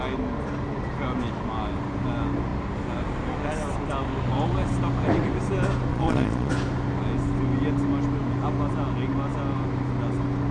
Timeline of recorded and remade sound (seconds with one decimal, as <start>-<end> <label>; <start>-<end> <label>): 0.0-5.9 recorded; 5.9-6.5 remade; 6.5-10.5 recorded